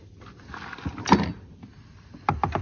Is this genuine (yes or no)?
yes